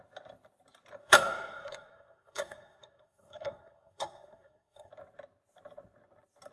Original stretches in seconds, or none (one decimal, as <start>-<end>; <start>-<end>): 0.0-1.0; 4.9-6.5